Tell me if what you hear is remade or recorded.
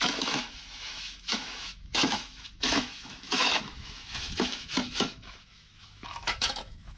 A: remade